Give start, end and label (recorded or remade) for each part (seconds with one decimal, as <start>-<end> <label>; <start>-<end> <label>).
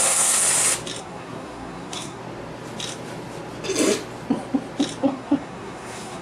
0.0-0.4 remade; 0.4-1.0 recorded; 1.0-2.2 remade; 2.2-5.0 recorded; 5.0-6.2 remade